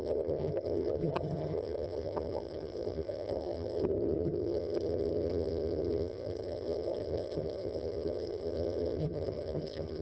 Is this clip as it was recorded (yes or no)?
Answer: no